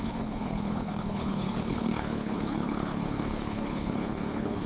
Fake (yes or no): yes